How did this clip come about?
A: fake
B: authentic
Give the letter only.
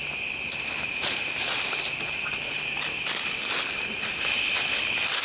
B